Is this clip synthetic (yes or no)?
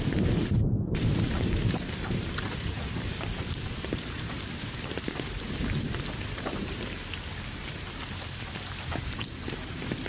yes